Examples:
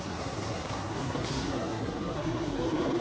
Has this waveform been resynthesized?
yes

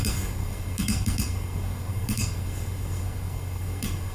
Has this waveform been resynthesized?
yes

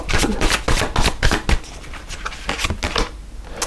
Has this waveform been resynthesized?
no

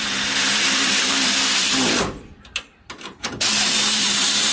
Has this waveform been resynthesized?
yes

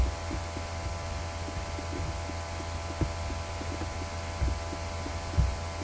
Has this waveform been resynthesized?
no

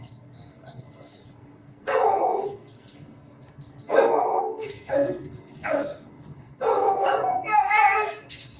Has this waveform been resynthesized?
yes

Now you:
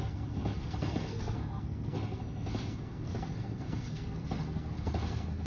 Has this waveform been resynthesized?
yes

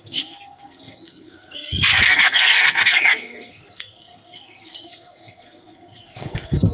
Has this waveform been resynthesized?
yes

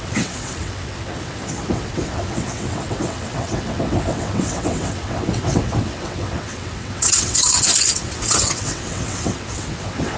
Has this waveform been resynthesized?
yes